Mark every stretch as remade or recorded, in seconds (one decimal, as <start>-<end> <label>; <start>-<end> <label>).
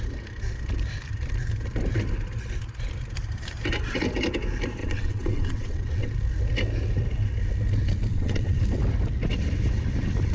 0.0-4.8 recorded; 4.8-6.1 remade; 6.1-8.1 recorded; 8.1-8.6 remade; 8.6-10.3 recorded